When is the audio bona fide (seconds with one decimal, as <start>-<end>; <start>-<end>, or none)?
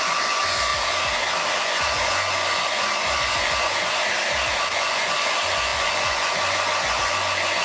0.7-1.6; 4.0-4.6